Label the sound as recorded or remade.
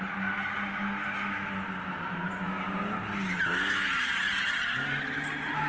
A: recorded